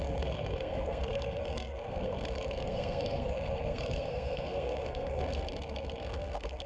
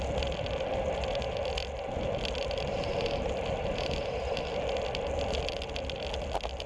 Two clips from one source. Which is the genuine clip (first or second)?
second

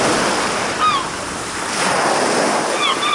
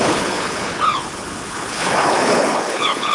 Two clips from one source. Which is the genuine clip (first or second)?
first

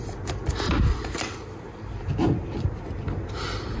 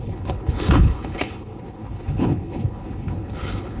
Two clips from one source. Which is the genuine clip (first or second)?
first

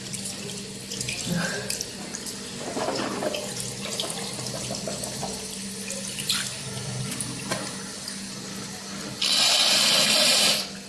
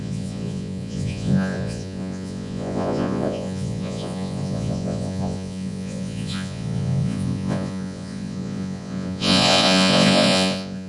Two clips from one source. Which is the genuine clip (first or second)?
first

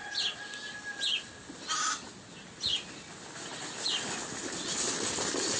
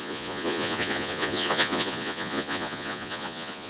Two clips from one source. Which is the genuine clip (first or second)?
first